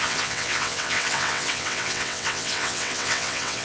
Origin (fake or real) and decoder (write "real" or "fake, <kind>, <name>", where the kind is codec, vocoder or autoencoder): fake, vocoder, WaveNeXt